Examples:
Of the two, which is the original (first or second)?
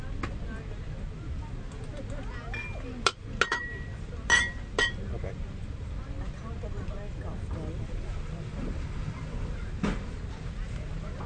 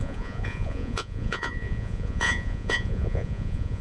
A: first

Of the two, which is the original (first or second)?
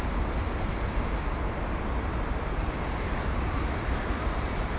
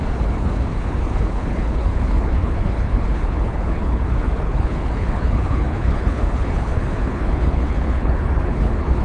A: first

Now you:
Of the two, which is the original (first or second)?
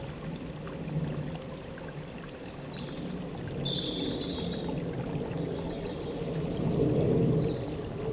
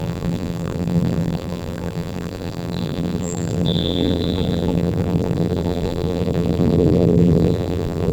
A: first